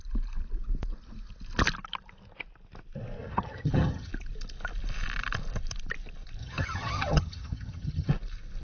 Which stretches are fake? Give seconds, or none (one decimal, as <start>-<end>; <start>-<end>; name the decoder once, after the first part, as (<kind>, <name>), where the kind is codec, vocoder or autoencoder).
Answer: 3.2-4.1 (vocoder, HiFi-GAN); 6.4-8.1